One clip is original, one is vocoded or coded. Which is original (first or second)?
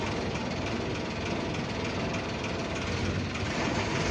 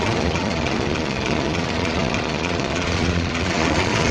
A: first